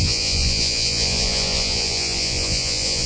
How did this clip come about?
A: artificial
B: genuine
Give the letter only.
A